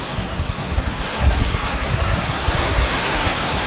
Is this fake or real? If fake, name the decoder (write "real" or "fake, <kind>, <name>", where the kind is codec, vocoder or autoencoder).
fake, codec, SNAC